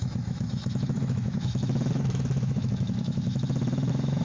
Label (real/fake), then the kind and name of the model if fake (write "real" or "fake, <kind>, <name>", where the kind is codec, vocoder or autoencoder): fake, autoencoder, DAC-VAE